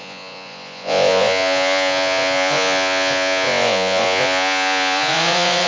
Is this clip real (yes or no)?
no